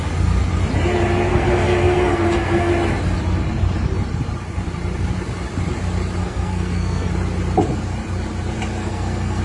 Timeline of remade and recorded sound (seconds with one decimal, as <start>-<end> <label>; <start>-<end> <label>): 0.0-1.3 recorded; 1.3-2.7 remade; 2.7-6.2 recorded; 6.2-7.1 remade; 7.1-8.8 recorded; 8.8-9.4 remade